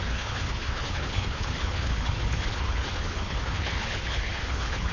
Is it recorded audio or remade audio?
remade